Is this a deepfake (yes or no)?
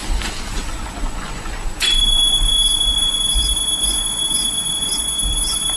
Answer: yes